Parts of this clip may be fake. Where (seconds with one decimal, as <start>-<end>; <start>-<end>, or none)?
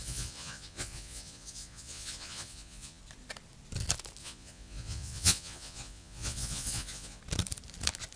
0.0-3.0; 4.2-7.2